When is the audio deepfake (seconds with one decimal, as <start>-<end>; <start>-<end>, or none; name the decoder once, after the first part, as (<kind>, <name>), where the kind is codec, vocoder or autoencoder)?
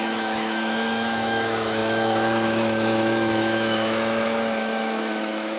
0.0-5.6 (autoencoder, DAC-VAE)